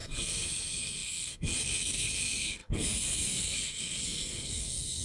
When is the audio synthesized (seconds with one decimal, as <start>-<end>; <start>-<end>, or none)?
0.0-5.0